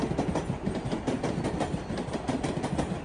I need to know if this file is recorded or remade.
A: recorded